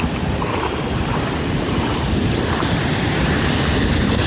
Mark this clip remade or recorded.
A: recorded